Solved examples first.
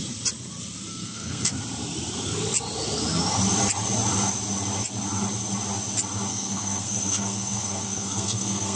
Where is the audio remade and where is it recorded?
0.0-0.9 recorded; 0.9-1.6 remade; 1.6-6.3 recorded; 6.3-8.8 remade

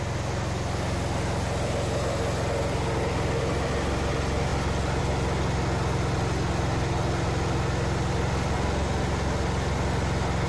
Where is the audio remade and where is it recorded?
0.0-10.5 recorded

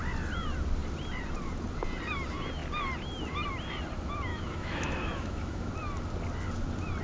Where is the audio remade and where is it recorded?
0.0-4.3 recorded; 4.3-5.7 remade; 5.7-7.0 recorded

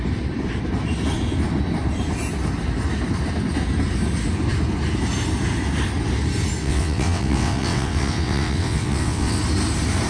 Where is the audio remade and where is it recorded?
0.0-6.6 recorded; 6.6-9.4 remade; 9.4-10.1 recorded

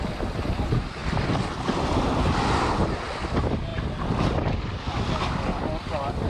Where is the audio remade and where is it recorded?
0.0-6.3 recorded

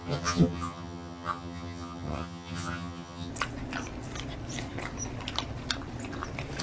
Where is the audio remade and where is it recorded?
0.0-3.3 remade; 3.3-6.6 recorded

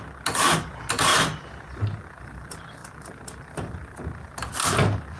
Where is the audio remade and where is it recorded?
0.0-5.2 recorded